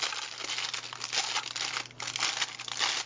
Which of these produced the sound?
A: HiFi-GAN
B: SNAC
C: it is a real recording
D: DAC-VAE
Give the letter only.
C